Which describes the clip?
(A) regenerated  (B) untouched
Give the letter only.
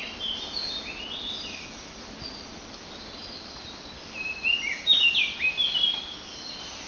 B